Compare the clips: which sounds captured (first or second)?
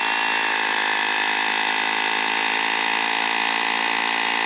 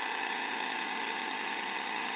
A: first